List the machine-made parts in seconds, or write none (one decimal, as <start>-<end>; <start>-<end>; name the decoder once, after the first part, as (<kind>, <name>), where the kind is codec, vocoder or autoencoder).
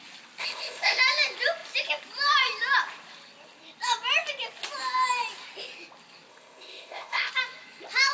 0.4-1.0 (codec, ZipCodec); 6.3-7.3